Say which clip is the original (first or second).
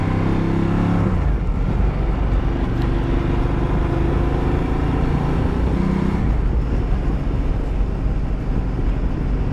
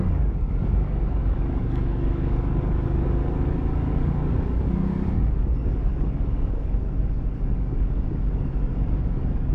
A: first